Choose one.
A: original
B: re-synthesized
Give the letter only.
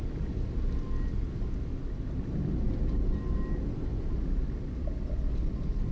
A